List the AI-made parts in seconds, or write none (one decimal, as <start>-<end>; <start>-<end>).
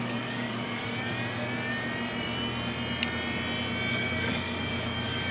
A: 0.0-0.8; 3.9-5.3